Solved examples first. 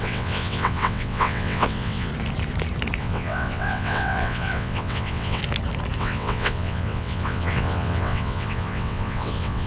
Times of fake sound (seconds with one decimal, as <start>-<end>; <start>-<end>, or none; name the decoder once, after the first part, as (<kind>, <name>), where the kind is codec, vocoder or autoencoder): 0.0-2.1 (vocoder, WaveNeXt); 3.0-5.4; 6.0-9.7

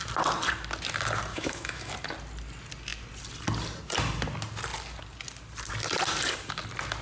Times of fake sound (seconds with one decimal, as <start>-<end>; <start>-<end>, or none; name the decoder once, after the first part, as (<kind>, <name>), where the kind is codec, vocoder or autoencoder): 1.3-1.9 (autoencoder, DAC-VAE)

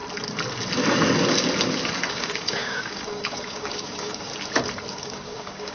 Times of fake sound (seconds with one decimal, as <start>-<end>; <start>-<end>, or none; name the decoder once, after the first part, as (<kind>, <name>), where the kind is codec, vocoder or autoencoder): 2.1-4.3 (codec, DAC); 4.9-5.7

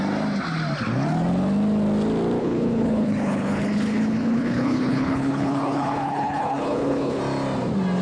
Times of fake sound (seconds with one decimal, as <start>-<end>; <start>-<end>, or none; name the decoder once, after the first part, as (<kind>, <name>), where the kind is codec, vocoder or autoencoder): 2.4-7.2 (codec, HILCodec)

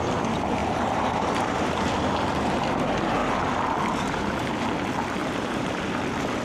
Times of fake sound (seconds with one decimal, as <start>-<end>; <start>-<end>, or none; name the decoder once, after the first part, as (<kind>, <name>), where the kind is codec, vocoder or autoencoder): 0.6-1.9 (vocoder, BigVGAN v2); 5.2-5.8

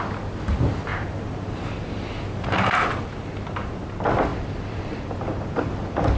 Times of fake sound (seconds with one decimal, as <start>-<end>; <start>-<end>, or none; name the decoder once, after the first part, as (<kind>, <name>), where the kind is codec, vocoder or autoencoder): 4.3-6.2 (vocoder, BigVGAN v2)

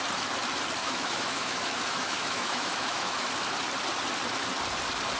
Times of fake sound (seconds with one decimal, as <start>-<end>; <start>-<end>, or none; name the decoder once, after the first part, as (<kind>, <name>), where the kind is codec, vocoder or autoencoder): 0.8-3.3 (autoencoder, DAC-VAE)

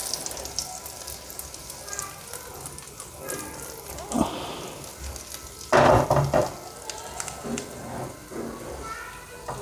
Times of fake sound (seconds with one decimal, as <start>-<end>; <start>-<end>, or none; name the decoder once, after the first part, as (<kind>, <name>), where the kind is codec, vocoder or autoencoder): none